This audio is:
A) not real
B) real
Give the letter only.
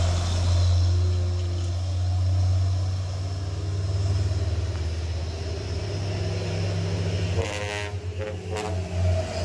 B